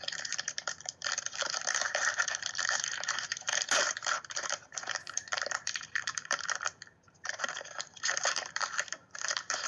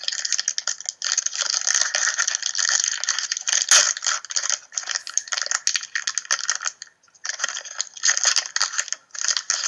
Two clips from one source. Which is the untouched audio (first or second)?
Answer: second